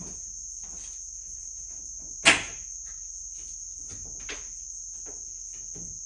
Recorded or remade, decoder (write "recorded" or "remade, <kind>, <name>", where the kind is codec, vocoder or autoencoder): recorded